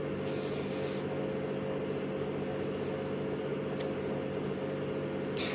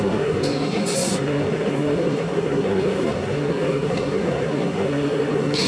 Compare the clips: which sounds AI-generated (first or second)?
second